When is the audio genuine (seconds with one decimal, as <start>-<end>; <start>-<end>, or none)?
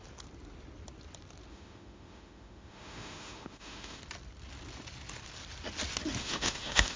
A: 0.0-1.5; 4.0-6.2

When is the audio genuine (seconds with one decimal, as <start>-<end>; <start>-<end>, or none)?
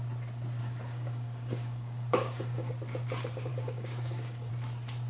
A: 0.0-0.6; 2.7-3.5; 4.5-5.1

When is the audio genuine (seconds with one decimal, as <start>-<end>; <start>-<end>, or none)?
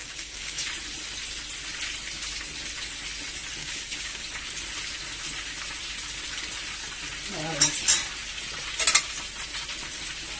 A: 0.7-3.6; 4.2-10.4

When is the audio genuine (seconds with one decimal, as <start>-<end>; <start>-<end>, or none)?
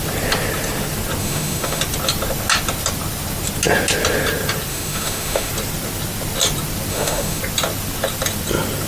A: 0.0-1.2; 1.8-4.7; 5.5-6.9; 7.4-8.9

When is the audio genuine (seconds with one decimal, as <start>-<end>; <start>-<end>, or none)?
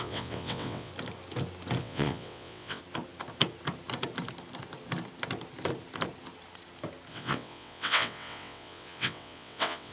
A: 0.9-1.8; 2.8-7.1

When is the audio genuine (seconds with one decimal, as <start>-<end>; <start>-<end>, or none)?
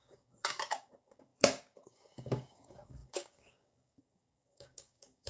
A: none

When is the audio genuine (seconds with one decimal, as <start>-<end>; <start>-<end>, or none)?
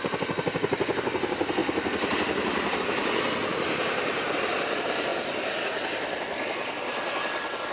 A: 0.0-1.6; 2.8-3.5; 4.3-7.7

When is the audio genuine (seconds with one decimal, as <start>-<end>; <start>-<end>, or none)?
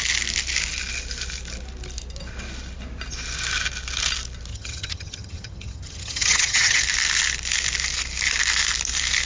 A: 0.0-4.5; 6.8-9.3